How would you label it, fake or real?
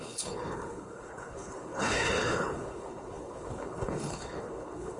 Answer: fake